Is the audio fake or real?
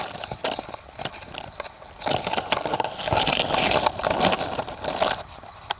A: real